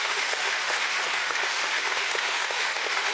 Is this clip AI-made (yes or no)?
yes